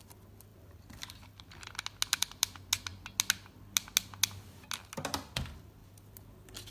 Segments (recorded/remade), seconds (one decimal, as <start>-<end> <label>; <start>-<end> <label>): 0.0-5.8 recorded; 5.8-6.7 remade